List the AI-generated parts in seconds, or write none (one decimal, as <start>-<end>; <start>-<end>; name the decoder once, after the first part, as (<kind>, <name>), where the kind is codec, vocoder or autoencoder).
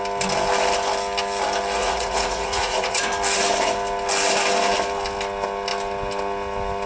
1.8-3.0 (vocoder, Vocos)